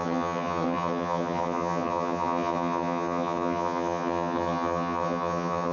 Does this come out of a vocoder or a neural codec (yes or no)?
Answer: yes